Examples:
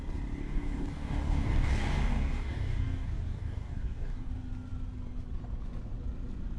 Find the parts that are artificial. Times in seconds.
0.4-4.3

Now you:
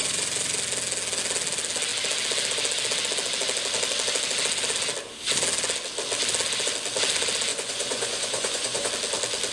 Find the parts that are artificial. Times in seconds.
7.5-8.9

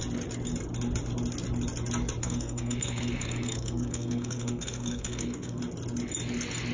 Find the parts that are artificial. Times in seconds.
2.2-5.6

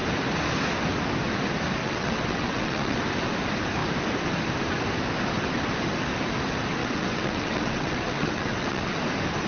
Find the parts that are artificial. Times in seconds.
1.8-3.0; 6.8-9.0

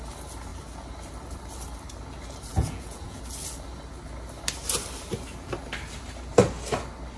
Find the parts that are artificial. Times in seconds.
2.5-3.2

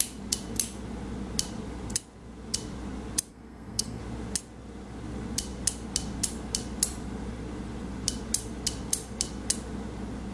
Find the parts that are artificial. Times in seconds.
3.3-4.0

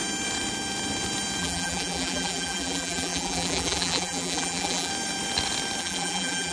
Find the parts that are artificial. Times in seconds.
1.4-4.9; 5.8-6.5

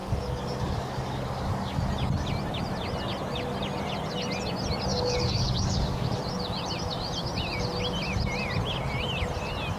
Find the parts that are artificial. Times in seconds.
0.0-1.9; 4.9-6.2